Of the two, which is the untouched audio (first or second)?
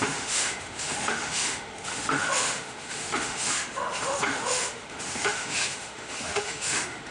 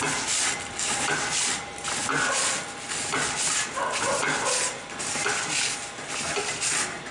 second